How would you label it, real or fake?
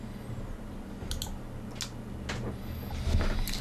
real